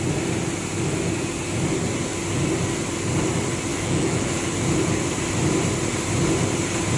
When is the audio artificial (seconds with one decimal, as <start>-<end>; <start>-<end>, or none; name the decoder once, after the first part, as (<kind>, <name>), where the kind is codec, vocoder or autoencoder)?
3.7-4.5 (autoencoder, DAC-VAE)